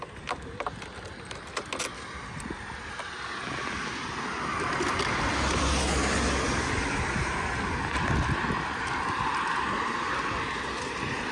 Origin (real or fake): real